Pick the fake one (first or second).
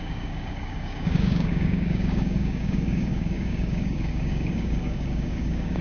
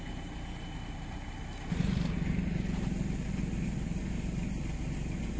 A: first